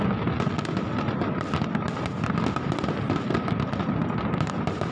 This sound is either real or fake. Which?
real